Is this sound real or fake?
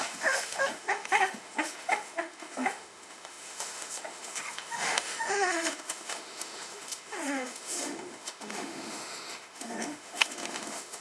fake